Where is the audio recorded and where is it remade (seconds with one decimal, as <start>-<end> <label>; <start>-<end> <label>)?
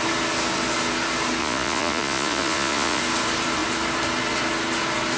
0.0-1.4 recorded; 1.4-3.0 remade; 3.0-5.2 recorded